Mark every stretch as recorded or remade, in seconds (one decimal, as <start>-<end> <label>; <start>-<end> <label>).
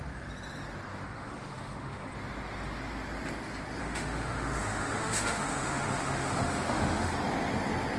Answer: 0.0-0.9 recorded; 0.9-2.1 remade; 2.1-3.8 recorded; 3.8-7.1 remade; 7.1-8.0 recorded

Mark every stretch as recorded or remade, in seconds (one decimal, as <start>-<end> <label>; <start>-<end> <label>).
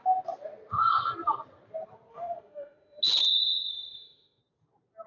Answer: 0.0-2.1 recorded; 2.1-3.0 remade; 3.0-3.7 recorded; 3.7-4.4 remade; 4.4-5.1 recorded